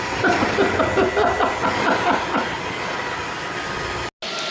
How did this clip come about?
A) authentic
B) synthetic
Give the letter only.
A